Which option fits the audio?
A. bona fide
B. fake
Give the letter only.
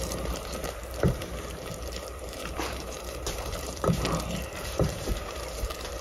B